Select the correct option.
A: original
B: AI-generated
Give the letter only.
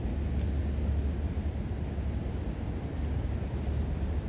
A